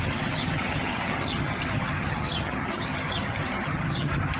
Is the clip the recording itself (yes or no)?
no